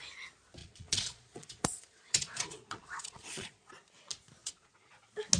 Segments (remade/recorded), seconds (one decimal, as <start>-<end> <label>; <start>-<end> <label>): 0.0-0.6 recorded; 0.6-3.7 remade; 3.7-4.4 recorded; 4.4-4.9 remade; 4.9-5.4 recorded